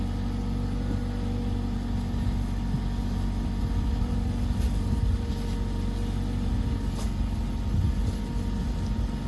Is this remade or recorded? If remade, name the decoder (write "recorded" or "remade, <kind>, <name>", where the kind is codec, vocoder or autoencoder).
recorded